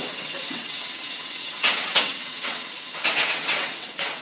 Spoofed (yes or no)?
yes